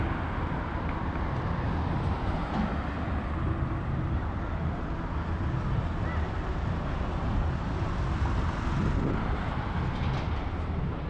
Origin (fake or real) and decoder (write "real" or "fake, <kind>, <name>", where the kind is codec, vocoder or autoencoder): real